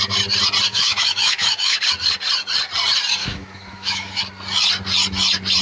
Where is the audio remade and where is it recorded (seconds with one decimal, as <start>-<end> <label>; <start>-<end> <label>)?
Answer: 0.0-0.7 recorded; 0.7-1.8 remade; 1.8-3.2 recorded; 3.2-4.2 remade; 4.2-5.6 recorded